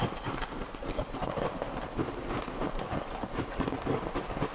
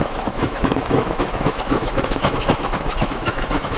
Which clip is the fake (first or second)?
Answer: second